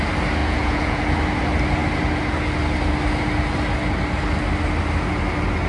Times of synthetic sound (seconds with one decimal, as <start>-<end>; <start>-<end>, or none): 0.4-1.0